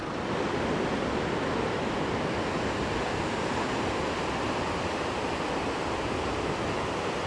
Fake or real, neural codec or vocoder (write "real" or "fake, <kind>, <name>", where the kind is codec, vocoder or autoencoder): real